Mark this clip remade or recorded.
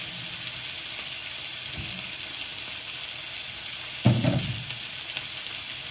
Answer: recorded